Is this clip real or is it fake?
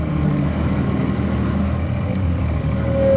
fake